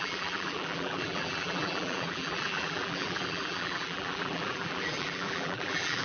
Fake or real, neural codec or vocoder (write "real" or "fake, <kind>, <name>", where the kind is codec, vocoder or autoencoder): fake, vocoder, BigVGAN v2